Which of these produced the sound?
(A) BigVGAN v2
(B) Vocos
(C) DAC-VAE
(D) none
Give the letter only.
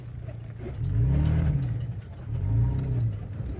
D